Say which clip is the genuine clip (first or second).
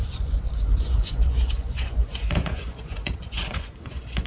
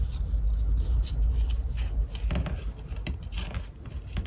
second